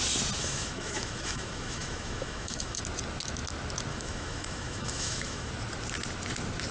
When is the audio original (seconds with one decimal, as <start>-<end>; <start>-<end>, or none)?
0.0-0.4; 2.8-3.9; 5.5-6.7